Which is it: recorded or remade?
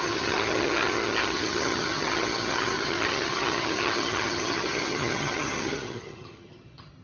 remade